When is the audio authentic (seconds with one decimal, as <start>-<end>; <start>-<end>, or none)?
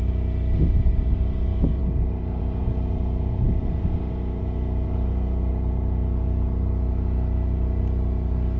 0.0-8.6